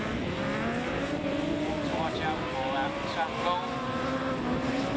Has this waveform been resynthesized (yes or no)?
no